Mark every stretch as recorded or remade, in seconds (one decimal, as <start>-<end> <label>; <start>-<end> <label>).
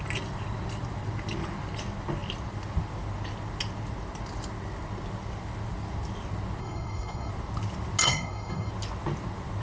0.0-6.6 recorded; 6.6-7.3 remade; 7.3-8.0 recorded; 8.0-8.7 remade; 8.7-9.6 recorded